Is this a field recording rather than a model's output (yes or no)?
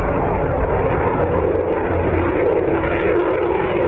yes